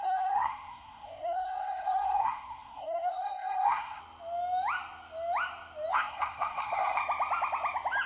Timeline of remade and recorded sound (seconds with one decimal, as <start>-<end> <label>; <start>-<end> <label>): 0.0-4.0 remade; 4.0-5.9 recorded; 5.9-7.0 remade; 7.0-8.1 recorded